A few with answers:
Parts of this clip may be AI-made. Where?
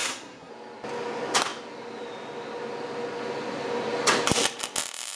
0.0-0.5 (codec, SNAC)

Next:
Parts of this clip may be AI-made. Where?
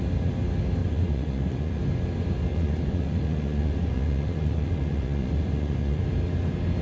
0.8-1.8 (vocoder, Vocos); 2.5-6.0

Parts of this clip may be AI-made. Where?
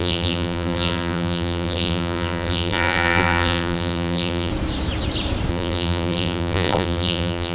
0.0-4.5 (vocoder, BigVGAN v2); 5.5-7.5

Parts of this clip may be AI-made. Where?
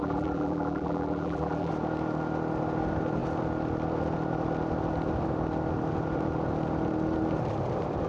0.0-1.7 (vocoder, BigVGAN v2)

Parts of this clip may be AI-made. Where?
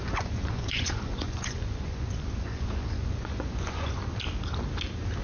0.0-4.0 (vocoder, Vocos)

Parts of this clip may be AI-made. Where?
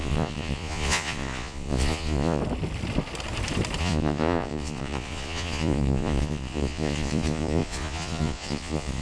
0.0-2.4 (vocoder, Vocos); 3.8-9.0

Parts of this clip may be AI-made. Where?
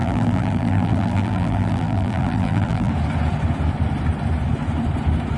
0.0-2.9 (vocoder, BigVGAN v2)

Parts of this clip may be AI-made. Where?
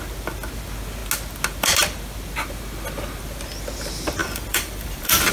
4.2-5.3 (vocoder, BigVGAN v2)